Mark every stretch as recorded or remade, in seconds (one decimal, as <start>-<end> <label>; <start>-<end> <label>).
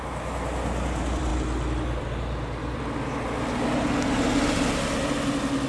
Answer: 0.0-5.7 recorded